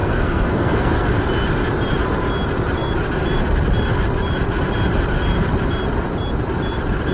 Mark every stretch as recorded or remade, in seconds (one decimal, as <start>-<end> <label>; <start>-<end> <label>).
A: 0.0-1.1 remade; 1.1-7.1 recorded